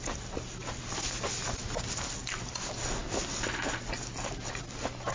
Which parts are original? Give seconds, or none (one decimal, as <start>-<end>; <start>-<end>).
0.0-5.1